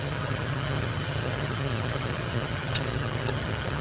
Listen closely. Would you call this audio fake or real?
fake